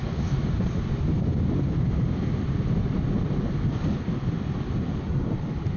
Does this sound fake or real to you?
real